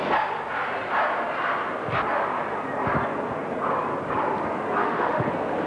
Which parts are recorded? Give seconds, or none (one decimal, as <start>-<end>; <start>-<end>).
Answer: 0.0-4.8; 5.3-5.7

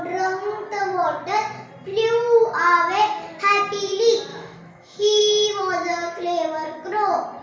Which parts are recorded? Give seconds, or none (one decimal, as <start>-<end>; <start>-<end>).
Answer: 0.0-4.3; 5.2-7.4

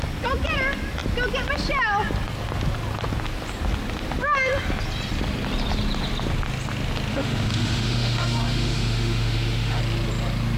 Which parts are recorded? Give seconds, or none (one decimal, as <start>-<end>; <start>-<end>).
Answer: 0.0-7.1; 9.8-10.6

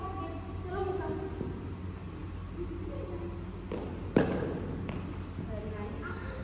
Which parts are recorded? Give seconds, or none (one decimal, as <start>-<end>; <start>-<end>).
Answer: 0.0-6.4